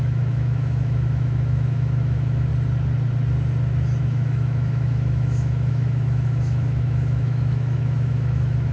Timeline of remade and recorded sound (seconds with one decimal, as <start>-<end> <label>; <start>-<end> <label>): 0.0-2.5 remade; 2.5-4.0 recorded; 4.0-8.7 remade